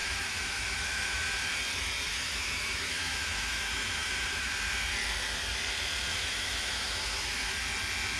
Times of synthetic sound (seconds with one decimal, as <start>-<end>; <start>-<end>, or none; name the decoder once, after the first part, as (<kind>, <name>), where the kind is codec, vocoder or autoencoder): 0.0-1.2 (autoencoder, DAC-VAE); 2.1-4.5; 6.1-7.5